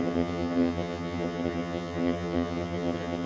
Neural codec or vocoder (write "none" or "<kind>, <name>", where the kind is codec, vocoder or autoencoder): vocoder, HiFi-GAN